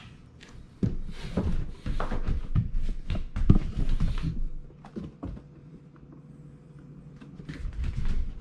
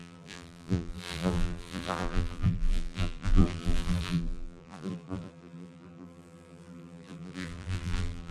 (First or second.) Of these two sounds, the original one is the first